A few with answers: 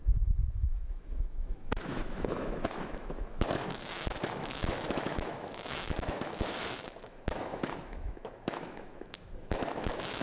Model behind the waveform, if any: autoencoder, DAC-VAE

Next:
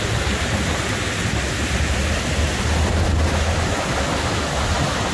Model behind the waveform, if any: none